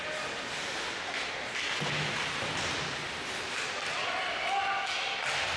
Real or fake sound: real